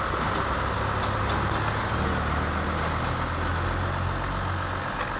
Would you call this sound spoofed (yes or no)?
no